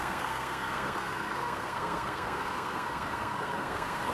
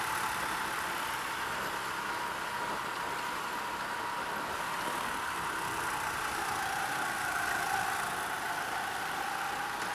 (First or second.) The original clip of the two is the second